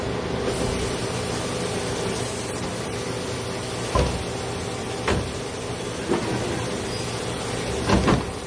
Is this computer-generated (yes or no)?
no